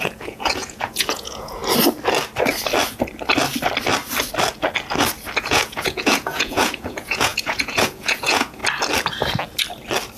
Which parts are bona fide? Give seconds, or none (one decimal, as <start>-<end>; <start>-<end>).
1.6-5.4; 8.6-10.2

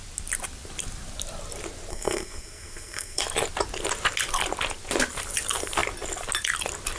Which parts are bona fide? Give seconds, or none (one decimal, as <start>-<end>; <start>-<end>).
0.0-1.9; 3.2-7.0

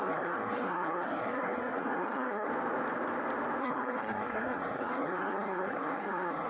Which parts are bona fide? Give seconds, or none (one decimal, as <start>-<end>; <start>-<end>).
2.5-3.6

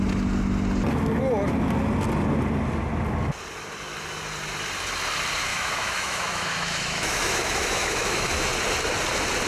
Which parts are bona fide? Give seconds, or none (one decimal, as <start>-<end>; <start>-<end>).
0.0-5.5; 8.5-9.5

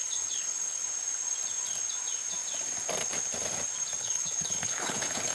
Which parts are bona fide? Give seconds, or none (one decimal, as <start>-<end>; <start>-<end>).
0.8-4.0